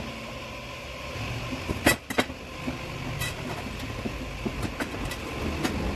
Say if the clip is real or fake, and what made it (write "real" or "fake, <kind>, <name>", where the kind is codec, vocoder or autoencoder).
real